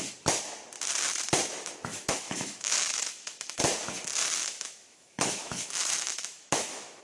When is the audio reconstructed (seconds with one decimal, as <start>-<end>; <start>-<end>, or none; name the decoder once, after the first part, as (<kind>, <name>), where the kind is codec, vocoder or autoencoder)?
1.9-3.6 (autoencoder, DAC-VAE); 4.4-7.0